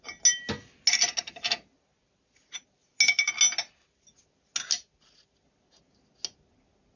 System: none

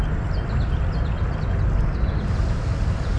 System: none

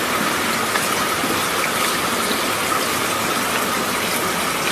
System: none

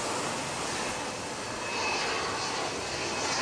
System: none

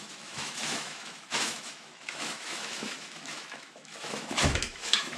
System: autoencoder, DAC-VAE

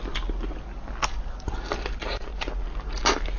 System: none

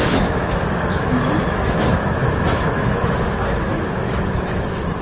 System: autoencoder, DAC-VAE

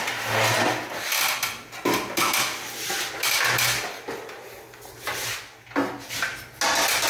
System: none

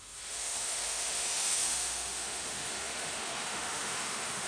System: autoencoder, DAC-VAE